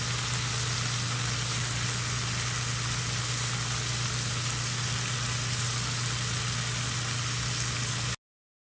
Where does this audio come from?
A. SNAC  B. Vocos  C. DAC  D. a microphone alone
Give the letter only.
D